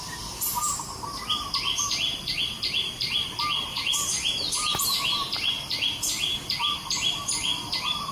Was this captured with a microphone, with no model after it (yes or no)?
yes